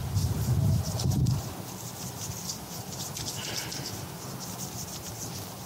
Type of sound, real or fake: real